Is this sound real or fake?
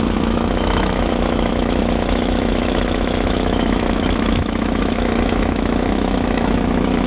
fake